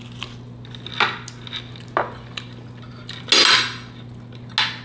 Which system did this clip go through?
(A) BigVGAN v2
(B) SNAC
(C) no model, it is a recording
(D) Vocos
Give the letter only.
C